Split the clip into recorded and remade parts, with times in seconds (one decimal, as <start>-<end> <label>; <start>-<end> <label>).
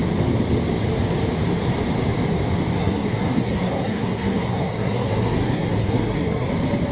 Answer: 0.0-2.8 recorded; 2.8-6.5 remade; 6.5-6.9 recorded